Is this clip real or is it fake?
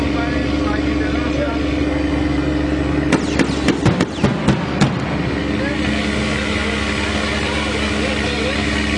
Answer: real